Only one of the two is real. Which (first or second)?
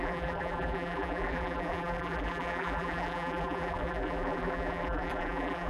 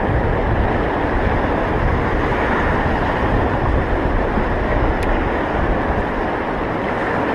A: second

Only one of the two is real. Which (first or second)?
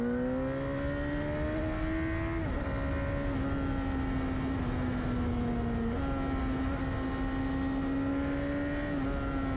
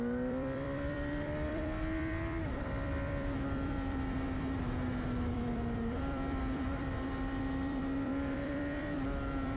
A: first